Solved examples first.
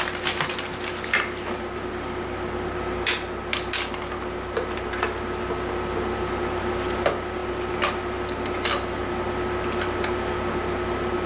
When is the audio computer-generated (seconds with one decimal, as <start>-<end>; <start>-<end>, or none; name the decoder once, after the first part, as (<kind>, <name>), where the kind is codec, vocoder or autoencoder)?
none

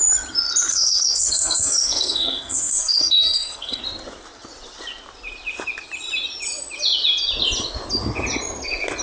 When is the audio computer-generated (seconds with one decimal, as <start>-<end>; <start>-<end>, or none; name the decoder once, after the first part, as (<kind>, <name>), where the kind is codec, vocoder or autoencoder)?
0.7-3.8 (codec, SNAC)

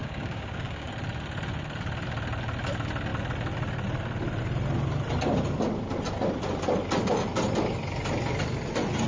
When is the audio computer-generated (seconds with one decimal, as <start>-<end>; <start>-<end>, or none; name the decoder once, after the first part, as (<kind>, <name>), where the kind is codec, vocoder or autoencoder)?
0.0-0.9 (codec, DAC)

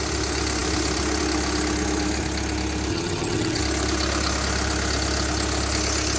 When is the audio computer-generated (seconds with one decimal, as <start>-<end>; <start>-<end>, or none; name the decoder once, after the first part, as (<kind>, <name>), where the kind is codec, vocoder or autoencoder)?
2.9-3.6 (vocoder, HiFi-GAN)